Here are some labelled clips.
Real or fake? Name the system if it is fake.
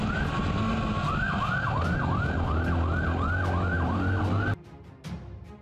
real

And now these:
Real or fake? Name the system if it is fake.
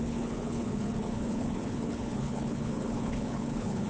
fake, codec, HILCodec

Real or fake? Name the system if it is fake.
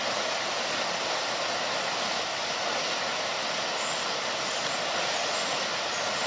real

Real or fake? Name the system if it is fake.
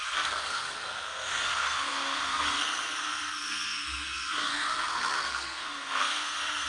fake, codec, SNAC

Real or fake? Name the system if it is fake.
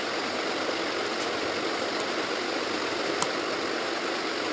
real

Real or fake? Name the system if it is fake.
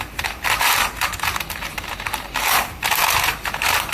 fake, vocoder, BigVGAN v2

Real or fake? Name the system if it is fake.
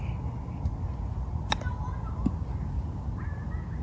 real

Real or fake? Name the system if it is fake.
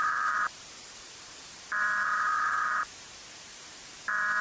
fake, vocoder, BigVGAN v2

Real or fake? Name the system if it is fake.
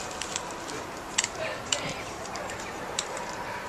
fake, vocoder, BigVGAN v2